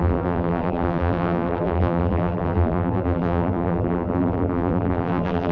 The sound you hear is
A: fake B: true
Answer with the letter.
A